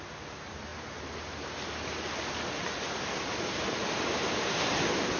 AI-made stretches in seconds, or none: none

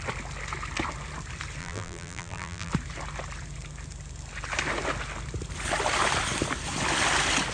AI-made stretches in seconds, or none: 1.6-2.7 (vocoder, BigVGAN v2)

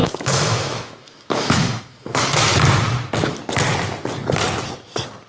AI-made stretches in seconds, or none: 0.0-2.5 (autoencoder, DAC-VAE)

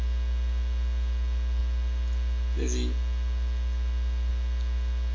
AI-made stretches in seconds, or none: none

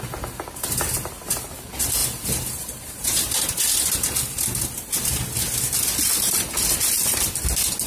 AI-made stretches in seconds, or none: none

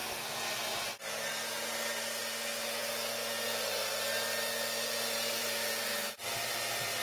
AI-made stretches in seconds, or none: 5.4-7.0 (vocoder, BigVGAN v2)

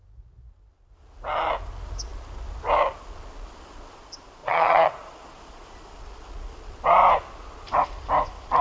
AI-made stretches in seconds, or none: 4.4-5.3 (vocoder, Vocos)